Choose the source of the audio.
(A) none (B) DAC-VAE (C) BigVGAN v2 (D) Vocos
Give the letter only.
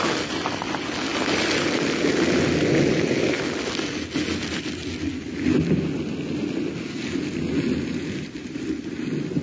A